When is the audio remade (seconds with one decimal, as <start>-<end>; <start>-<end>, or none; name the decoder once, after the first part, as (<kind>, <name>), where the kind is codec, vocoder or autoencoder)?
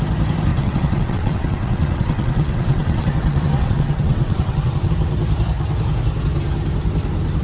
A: 0.5-4.9 (vocoder, WaveNeXt)